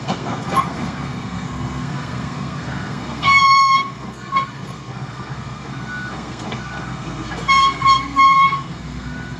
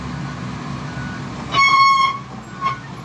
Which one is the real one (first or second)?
second